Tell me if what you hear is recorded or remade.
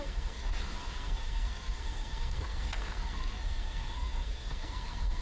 remade